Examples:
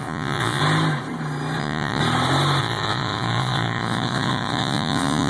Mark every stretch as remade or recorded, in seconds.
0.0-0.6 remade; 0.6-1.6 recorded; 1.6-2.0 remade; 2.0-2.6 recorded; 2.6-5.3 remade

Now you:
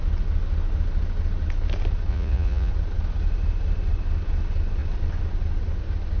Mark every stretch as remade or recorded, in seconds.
0.0-2.1 recorded; 2.1-2.7 remade; 2.7-6.2 recorded

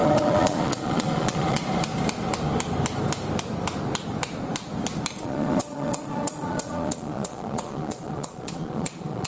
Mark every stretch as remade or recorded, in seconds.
0.0-1.6 remade; 1.6-5.2 recorded; 5.2-9.3 remade

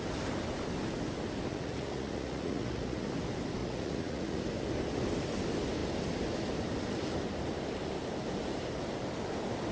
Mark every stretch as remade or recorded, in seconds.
0.0-1.5 recorded; 1.5-3.1 remade; 3.1-3.6 recorded; 3.6-4.4 remade; 4.4-9.7 recorded

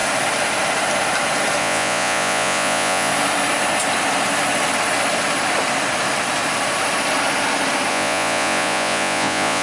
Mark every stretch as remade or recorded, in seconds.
0.0-1.6 recorded; 1.6-3.1 remade; 3.1-7.9 recorded; 7.9-9.6 remade